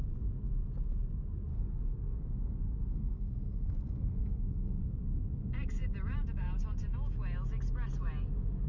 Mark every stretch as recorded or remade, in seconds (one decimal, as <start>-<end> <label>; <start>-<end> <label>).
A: 0.0-1.5 recorded; 1.5-4.8 remade; 4.8-8.7 recorded